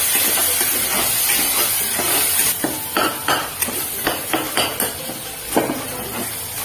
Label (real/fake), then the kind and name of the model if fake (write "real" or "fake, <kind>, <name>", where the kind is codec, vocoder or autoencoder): real